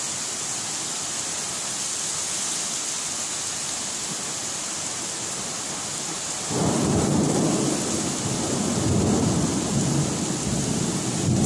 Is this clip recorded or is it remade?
recorded